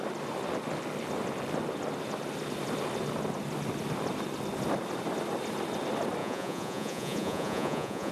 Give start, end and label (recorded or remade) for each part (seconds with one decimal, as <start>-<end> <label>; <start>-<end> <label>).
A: 0.0-6.2 recorded; 6.2-8.1 remade